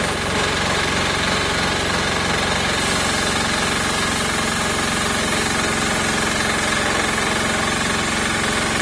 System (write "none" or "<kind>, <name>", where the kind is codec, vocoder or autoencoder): none